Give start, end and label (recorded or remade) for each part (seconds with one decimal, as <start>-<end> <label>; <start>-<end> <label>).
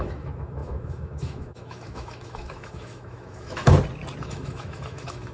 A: 0.0-3.7 remade; 3.7-4.2 recorded; 4.2-5.3 remade